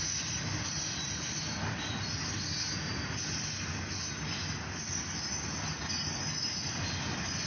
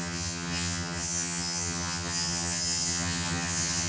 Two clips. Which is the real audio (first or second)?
first